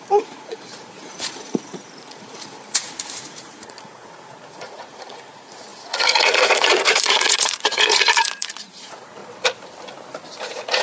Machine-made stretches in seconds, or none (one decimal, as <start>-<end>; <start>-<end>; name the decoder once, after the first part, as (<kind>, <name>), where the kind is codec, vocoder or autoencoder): 0.0-9.2 (vocoder, Vocos); 10.4-10.8